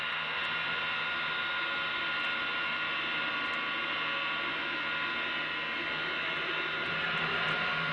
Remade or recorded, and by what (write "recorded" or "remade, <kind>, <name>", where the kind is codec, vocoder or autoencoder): recorded